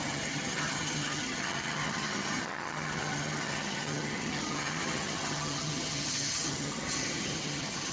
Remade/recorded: remade